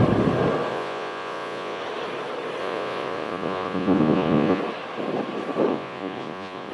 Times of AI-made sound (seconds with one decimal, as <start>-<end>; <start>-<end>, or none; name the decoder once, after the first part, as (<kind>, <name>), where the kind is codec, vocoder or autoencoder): 0.7-1.8 (vocoder, Vocos); 2.6-4.6; 5.7-6.7